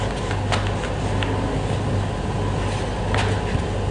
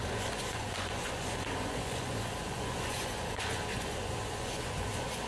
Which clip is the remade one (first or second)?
second